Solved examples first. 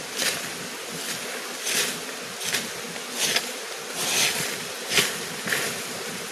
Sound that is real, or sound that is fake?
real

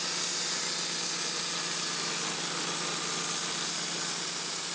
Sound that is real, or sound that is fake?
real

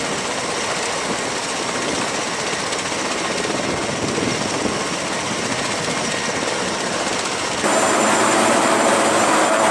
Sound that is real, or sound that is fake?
real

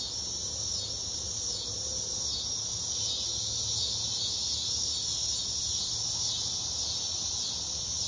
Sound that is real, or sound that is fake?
real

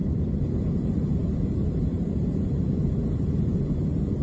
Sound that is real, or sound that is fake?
fake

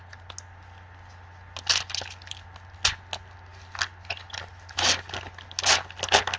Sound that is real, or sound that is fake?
real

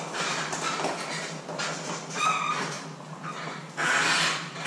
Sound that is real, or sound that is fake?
real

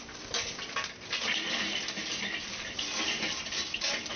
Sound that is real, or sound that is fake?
fake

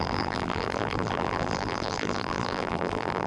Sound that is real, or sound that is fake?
fake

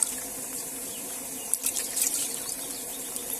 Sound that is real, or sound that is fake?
fake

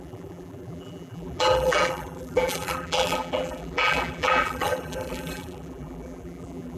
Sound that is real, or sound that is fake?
fake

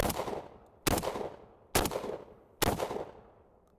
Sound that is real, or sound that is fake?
real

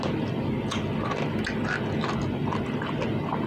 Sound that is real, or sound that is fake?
real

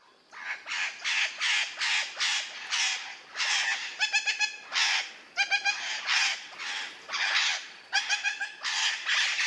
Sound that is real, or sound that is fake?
real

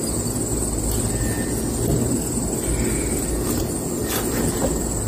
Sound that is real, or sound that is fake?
real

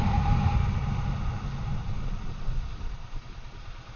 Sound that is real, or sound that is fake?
fake